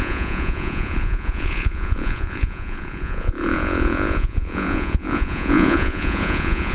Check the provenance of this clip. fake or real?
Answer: fake